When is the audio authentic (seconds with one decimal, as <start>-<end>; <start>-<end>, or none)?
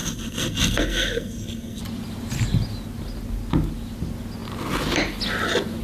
1.8-5.8